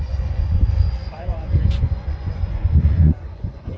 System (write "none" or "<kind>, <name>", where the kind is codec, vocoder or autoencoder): vocoder, Vocos